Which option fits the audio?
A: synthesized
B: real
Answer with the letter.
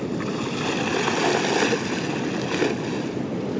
B